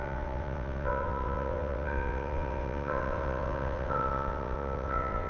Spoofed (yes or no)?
yes